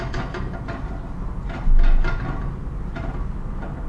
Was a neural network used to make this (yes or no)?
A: no